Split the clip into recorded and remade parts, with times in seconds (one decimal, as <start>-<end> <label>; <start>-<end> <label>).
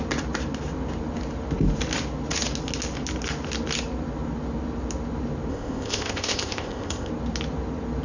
0.0-5.5 recorded; 5.5-7.1 remade; 7.1-8.0 recorded